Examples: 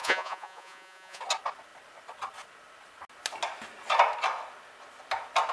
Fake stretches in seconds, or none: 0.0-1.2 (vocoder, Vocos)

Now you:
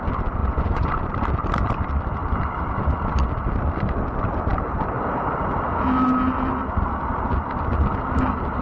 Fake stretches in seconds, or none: 0.4-1.0 (vocoder, Vocos)

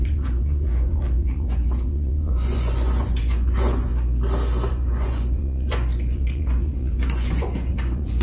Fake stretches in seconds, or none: 0.0-3.9 (vocoder, Vocos); 4.7-8.2

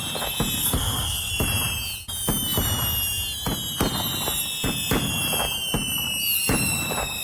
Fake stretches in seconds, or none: 0.6-1.3 (codec, SNAC)

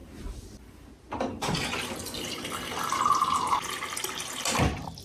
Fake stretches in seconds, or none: none

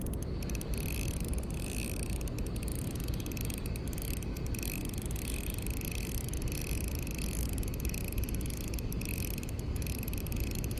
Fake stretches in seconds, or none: none